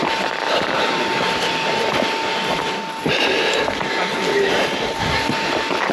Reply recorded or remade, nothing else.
recorded